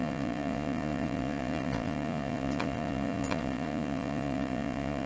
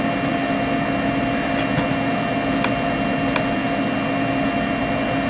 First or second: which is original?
second